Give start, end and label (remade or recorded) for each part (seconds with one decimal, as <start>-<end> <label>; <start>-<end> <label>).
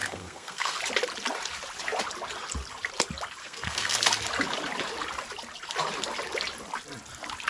0.0-0.8 remade; 0.8-3.4 recorded; 3.4-4.0 remade; 4.0-7.5 recorded